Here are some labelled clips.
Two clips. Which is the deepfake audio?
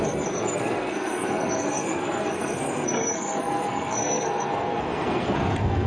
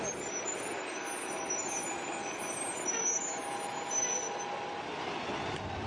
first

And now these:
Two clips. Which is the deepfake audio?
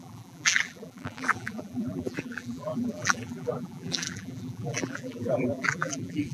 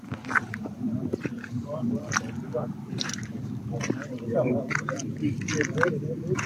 first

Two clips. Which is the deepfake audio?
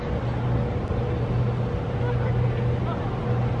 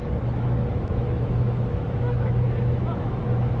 second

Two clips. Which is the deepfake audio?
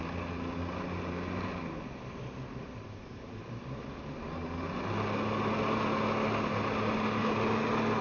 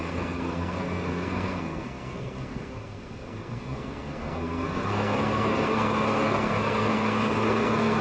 second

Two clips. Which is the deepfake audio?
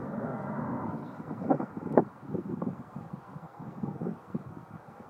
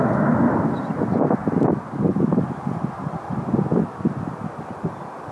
first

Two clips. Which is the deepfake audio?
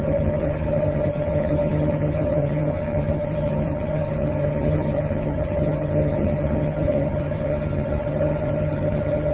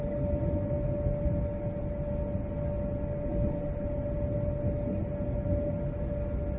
first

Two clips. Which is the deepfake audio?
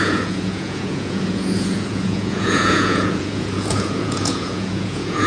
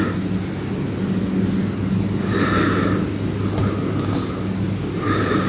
first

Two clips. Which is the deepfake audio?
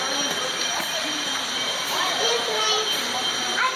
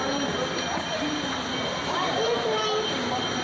first